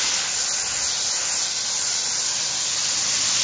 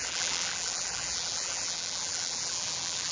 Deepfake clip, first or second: second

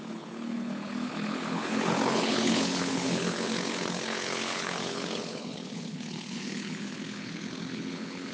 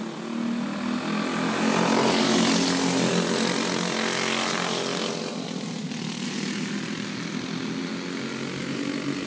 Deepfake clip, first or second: first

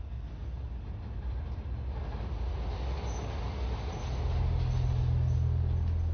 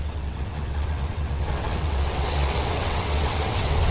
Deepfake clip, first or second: second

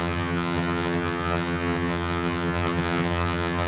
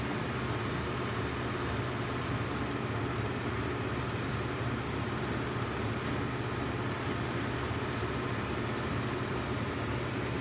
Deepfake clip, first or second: first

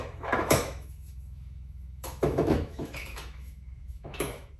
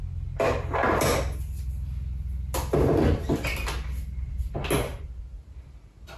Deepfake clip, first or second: first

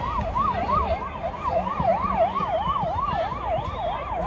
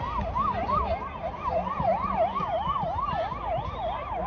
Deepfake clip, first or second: first